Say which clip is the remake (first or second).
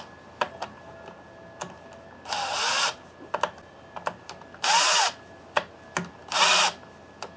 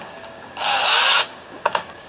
second